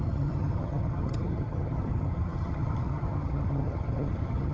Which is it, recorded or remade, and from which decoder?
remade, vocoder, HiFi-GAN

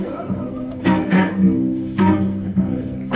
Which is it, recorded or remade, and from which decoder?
remade, codec, SNAC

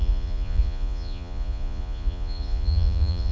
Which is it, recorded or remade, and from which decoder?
remade, vocoder, Vocos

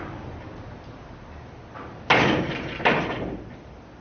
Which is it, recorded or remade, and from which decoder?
recorded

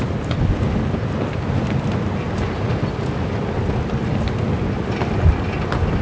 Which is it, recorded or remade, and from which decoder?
recorded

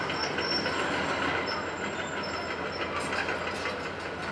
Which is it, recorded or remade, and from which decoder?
recorded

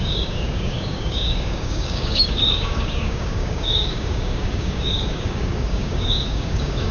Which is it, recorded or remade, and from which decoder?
remade, codec, DAC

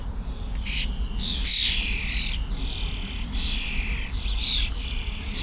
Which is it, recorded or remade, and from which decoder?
recorded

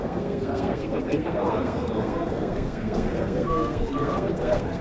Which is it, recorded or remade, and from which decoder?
remade, codec, SNAC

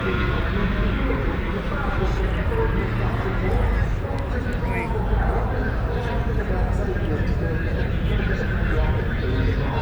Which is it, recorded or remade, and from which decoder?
recorded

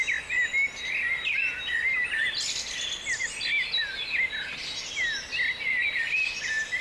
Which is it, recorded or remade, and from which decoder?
recorded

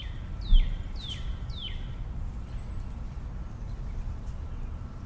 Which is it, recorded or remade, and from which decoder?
recorded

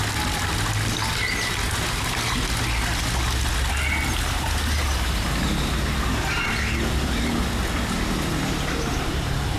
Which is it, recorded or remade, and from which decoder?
recorded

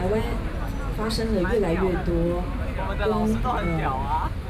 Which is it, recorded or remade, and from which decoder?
recorded